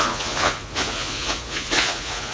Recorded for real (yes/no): no